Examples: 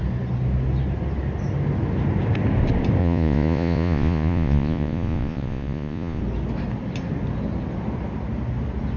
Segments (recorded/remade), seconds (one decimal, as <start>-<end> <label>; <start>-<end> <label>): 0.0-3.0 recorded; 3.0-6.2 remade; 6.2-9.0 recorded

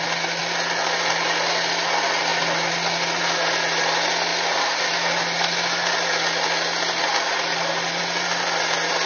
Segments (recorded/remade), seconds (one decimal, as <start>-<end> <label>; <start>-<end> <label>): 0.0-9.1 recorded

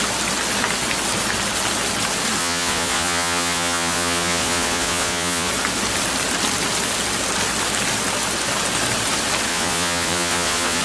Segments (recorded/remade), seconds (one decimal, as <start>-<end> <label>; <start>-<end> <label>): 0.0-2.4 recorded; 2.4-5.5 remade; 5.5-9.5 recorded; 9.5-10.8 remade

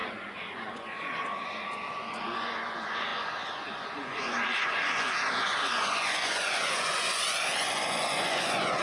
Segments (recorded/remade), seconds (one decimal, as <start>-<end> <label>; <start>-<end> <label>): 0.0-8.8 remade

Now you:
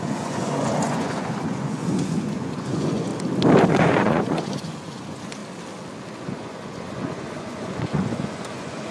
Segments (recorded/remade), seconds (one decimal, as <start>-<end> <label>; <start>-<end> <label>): 0.0-3.1 remade; 3.1-3.7 recorded; 3.7-5.4 remade; 5.4-6.3 recorded; 6.3-8.9 remade

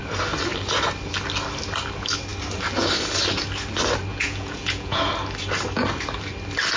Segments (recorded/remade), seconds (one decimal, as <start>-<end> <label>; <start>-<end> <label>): 0.0-4.1 recorded; 4.1-5.0 remade; 5.0-6.8 recorded